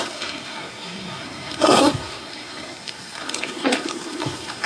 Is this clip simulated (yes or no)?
yes